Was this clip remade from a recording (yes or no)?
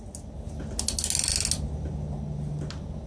no